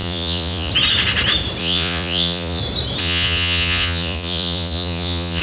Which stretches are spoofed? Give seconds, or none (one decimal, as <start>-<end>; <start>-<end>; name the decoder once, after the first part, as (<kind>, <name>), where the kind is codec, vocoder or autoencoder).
0.0-0.7 (vocoder, Vocos); 1.6-2.6; 3.0-5.4

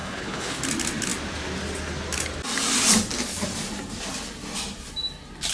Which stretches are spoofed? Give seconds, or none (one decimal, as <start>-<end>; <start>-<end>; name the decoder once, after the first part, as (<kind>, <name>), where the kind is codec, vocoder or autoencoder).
0.0-0.6 (codec, HILCodec)

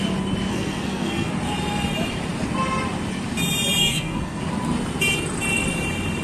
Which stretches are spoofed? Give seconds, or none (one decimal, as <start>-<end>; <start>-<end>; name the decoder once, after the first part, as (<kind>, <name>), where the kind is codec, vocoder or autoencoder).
0.5-1.3 (codec, SNAC); 3.8-4.4

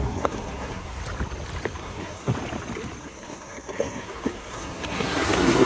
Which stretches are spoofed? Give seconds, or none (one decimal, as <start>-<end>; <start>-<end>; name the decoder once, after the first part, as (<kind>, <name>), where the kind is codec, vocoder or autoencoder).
0.0-1.0 (codec, SNAC); 1.8-2.3; 3.0-5.7

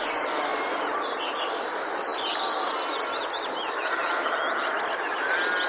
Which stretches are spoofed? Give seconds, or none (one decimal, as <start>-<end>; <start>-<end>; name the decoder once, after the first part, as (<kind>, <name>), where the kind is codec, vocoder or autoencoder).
none

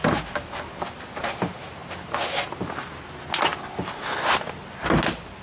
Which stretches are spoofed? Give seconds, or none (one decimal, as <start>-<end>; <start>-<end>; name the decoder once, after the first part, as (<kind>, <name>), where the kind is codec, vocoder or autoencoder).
none

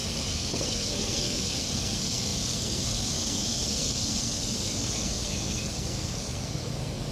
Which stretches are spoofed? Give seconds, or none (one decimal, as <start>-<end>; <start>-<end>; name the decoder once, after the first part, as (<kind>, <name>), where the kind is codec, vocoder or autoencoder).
0.0-7.1 (codec, SNAC)